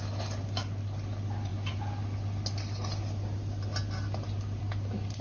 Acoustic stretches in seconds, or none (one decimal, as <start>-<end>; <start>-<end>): 0.0-5.2